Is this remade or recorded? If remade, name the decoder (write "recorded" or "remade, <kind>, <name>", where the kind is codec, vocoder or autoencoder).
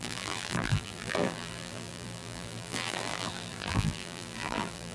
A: remade, vocoder, BigVGAN v2